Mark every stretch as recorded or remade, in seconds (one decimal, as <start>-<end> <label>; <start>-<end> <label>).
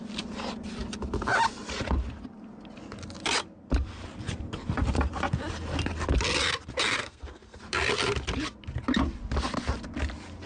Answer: 0.0-7.0 recorded; 7.0-7.6 remade; 7.6-10.5 recorded